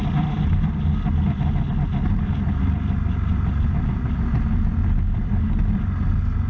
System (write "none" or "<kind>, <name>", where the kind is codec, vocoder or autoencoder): none